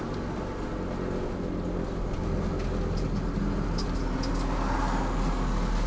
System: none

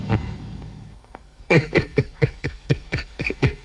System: codec, SNAC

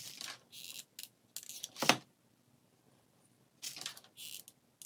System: none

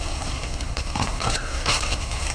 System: codec, SNAC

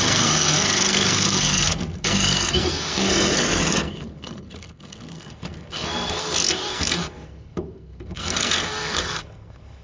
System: codec, SNAC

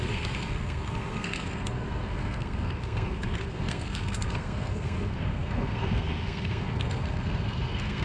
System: codec, SNAC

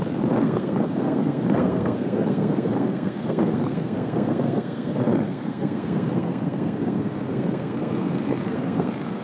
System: codec, SNAC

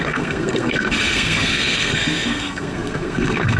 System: codec, SNAC